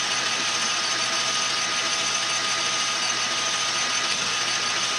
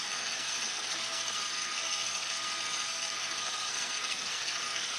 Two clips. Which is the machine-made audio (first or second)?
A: second